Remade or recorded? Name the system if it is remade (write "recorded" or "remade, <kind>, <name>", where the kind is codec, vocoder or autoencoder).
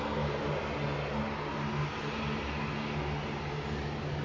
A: recorded